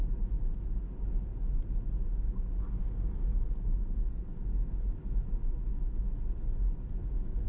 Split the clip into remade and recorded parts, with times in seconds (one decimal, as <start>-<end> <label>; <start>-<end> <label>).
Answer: 0.0-7.5 recorded